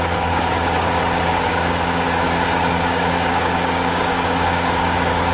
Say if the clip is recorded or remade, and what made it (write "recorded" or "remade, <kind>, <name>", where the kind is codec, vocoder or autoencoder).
remade, codec, DAC